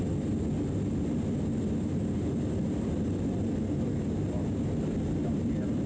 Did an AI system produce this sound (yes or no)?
no